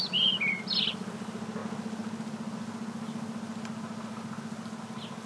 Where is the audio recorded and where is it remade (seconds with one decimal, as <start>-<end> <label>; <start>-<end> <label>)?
0.0-5.3 recorded